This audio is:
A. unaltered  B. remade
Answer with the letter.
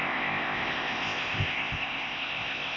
B